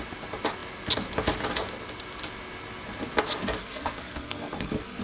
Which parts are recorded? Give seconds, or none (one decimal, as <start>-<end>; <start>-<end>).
0.0-3.6